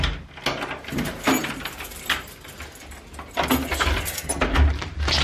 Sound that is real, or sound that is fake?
real